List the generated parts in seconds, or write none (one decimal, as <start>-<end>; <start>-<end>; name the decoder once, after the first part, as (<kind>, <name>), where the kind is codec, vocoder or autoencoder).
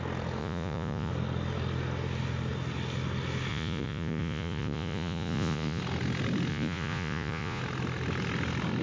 0.4-1.1 (vocoder, Vocos); 3.5-5.8; 6.5-7.6